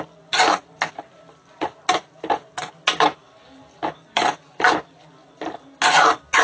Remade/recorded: recorded